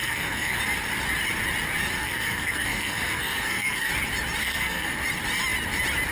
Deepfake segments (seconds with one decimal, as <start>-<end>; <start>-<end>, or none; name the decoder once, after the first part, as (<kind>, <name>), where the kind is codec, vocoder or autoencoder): 0.0-0.6 (codec, SNAC); 2.0-3.9; 4.4-5.0